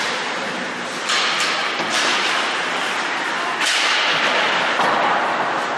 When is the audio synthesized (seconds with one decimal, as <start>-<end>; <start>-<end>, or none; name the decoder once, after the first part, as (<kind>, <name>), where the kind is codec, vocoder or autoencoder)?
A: 1.6-3.2 (vocoder, BigVGAN v2)